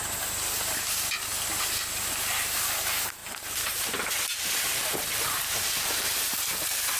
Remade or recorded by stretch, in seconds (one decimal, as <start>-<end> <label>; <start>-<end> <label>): 0.0-3.2 recorded; 3.2-4.1 remade; 4.1-4.7 recorded; 4.7-6.0 remade; 6.0-7.0 recorded